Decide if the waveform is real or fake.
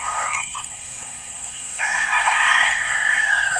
fake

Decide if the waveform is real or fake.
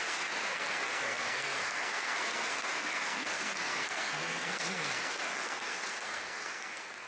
fake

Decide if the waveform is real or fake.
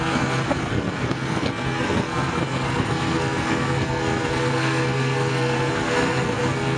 fake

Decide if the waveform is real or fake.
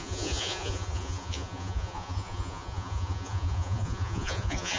fake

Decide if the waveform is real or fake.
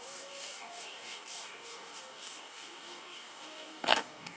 fake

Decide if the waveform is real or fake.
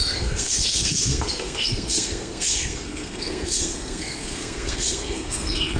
fake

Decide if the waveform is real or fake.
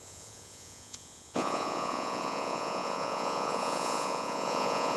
fake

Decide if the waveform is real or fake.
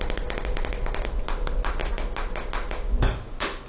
real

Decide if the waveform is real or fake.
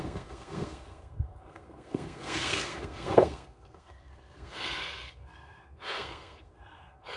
fake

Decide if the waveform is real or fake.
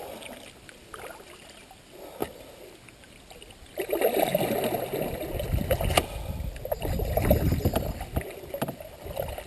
real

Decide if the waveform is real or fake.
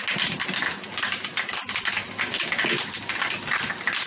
real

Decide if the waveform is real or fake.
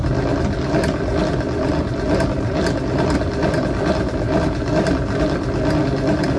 real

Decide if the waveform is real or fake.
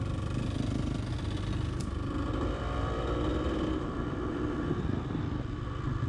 fake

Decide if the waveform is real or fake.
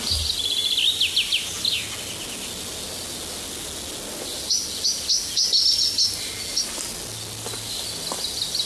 real